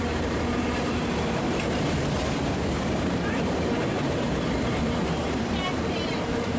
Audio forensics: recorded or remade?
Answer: remade